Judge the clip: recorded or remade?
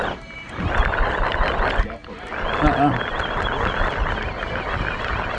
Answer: recorded